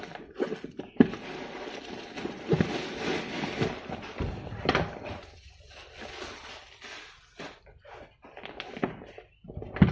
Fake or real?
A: real